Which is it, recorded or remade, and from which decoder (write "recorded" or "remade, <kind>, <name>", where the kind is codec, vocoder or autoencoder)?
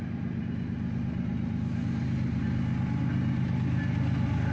recorded